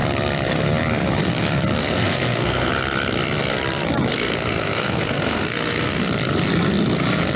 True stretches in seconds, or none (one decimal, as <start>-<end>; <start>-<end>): 0.0-1.8; 2.7-4.1; 6.0-7.4